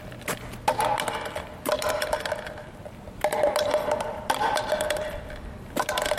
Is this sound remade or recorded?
recorded